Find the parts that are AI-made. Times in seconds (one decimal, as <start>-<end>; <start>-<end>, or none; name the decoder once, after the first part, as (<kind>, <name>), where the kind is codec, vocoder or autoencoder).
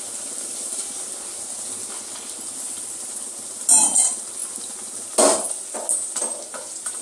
none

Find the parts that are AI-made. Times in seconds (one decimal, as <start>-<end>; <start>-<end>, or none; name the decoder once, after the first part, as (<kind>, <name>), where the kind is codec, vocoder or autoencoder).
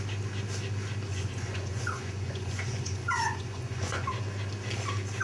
1.1-4.1 (vocoder, Vocos)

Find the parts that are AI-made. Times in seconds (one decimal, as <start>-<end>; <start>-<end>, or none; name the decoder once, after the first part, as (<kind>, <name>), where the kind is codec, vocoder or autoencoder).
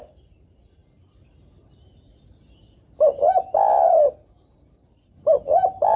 0.0-0.8 (vocoder, BigVGAN v2); 4.4-6.0